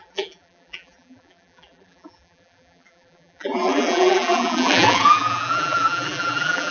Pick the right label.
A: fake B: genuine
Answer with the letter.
A